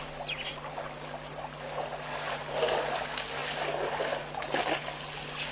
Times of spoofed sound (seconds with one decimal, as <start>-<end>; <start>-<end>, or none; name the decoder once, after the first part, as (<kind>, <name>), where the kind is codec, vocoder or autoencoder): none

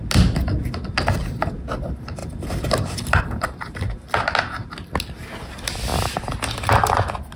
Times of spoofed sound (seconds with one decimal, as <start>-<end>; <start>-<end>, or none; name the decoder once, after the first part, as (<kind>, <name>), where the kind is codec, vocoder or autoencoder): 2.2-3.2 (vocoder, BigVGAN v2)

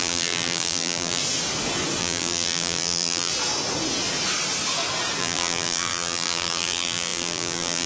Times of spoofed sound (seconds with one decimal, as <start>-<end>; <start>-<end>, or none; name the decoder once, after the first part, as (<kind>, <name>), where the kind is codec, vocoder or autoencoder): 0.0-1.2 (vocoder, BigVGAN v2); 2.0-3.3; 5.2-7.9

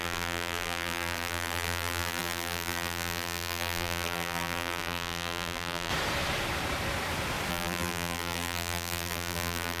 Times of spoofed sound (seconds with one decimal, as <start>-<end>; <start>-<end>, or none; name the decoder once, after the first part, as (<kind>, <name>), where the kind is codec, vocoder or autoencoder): 0.0-5.9 (vocoder, BigVGAN v2); 7.5-9.8

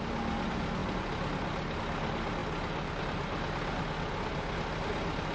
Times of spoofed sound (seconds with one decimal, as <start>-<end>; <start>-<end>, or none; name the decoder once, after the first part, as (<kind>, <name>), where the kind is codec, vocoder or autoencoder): none